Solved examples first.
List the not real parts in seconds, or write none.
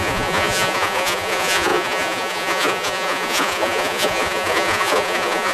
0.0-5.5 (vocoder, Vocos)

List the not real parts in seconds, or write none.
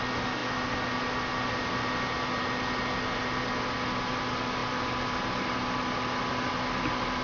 4.6-6.5 (vocoder, BigVGAN v2)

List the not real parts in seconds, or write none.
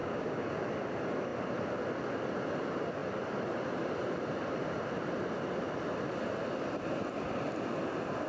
0.0-0.7 (codec, DAC)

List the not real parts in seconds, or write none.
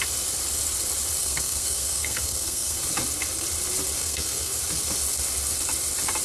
1.2-2.8 (codec, SNAC); 4.0-4.6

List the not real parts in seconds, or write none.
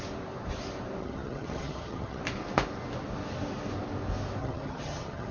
1.0-2.2 (vocoder, HiFi-GAN); 4.4-5.3